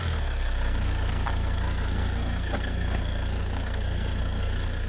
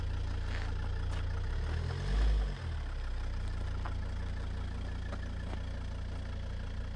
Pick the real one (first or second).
second